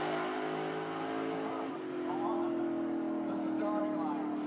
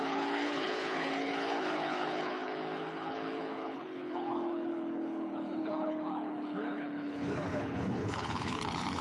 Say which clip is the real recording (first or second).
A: first